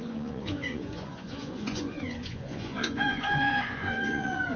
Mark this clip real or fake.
fake